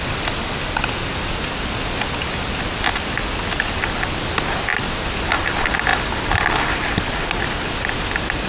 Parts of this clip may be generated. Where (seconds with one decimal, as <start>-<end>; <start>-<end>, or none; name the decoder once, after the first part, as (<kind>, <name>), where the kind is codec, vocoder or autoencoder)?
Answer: none